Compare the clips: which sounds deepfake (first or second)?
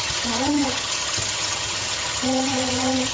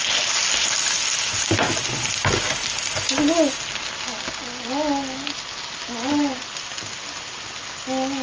first